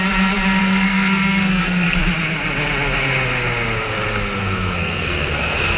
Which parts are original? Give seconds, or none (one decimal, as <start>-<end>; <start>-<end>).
0.0-0.6; 2.0-4.4